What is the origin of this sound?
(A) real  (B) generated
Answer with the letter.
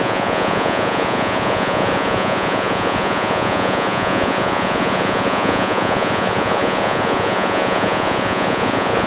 B